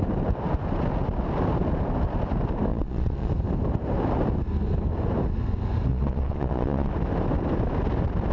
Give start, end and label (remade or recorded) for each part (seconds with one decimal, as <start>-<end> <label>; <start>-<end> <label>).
0.0-2.7 recorded; 2.7-3.3 remade; 3.3-5.9 recorded; 5.9-6.9 remade; 6.9-8.3 recorded